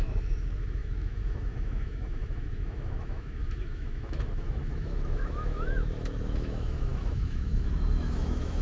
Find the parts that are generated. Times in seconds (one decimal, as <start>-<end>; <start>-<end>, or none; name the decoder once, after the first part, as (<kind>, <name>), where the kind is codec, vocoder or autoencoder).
0.0-8.6 (autoencoder, DAC-VAE)